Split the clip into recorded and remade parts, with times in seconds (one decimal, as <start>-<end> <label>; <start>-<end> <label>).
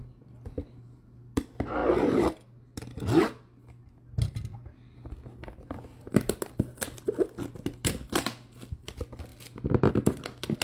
0.0-10.6 recorded